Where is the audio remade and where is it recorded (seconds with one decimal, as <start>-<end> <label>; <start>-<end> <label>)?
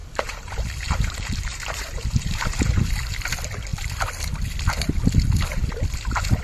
0.0-2.9 remade; 2.9-6.4 recorded